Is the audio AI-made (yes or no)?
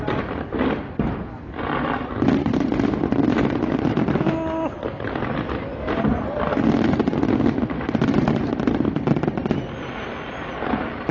no